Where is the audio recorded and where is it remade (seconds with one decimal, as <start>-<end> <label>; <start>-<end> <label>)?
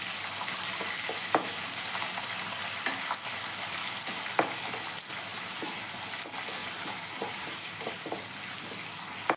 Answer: 0.0-1.2 recorded; 1.2-2.3 remade; 2.3-5.3 recorded; 5.3-5.9 remade; 5.9-6.6 recorded; 6.6-8.2 remade; 8.2-9.4 recorded